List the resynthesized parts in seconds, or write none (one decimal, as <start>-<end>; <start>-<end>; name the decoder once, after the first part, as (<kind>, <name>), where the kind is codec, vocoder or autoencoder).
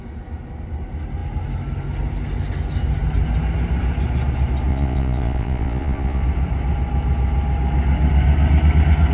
4.7-6.2 (vocoder, Vocos)